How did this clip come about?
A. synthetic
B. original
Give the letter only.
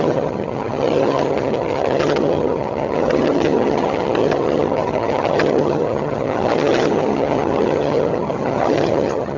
A